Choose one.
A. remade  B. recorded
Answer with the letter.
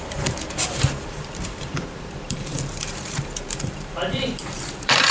A